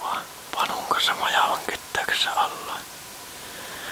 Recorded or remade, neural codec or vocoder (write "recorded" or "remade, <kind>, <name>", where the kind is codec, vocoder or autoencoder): recorded